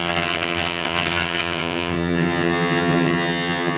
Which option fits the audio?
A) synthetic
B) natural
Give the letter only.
A